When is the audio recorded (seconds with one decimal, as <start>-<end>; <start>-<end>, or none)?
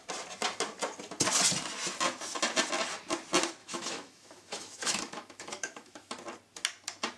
0.0-3.6; 6.1-7.2